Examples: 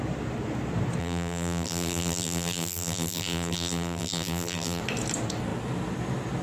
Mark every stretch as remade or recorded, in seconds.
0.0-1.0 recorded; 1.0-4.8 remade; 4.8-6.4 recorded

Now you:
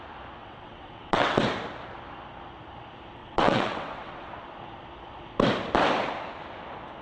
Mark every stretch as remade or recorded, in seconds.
0.0-0.4 recorded; 0.4-1.4 remade; 1.4-3.2 recorded; 3.2-4.3 remade; 4.3-7.0 recorded

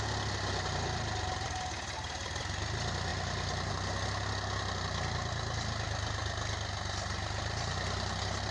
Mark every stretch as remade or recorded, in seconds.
0.0-8.5 recorded

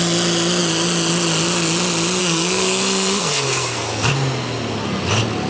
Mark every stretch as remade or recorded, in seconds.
0.0-2.2 recorded; 2.2-4.1 remade; 4.1-5.5 recorded